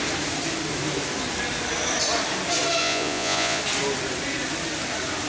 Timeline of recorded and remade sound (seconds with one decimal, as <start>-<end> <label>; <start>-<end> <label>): 0.0-2.8 recorded; 2.8-3.6 remade; 3.6-5.3 recorded

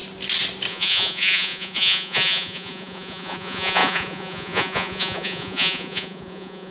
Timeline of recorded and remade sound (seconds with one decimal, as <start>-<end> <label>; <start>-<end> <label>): 0.0-0.7 recorded; 0.7-6.7 remade

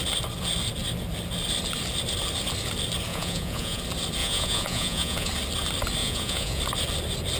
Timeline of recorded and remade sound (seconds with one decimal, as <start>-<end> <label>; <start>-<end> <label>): 0.0-3.1 recorded; 3.1-3.8 remade; 3.8-4.2 recorded; 4.2-5.3 remade; 5.3-6.0 recorded; 6.0-6.6 remade; 6.6-7.4 recorded